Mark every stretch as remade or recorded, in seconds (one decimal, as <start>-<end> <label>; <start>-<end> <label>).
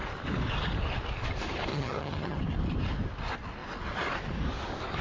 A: 0.0-1.7 recorded; 1.7-2.4 remade; 2.4-5.0 recorded